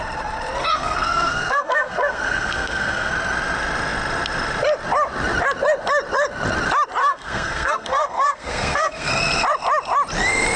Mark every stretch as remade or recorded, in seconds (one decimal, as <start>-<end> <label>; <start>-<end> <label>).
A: 0.0-0.6 recorded; 0.6-3.1 remade; 3.1-7.0 recorded; 7.0-9.1 remade; 9.1-10.6 recorded